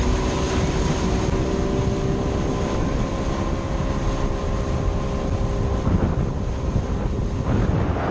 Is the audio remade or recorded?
recorded